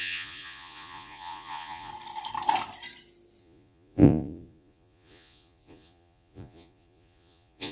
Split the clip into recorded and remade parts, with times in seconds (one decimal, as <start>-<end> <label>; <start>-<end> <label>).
0.0-1.9 remade; 1.9-3.4 recorded; 3.4-7.7 remade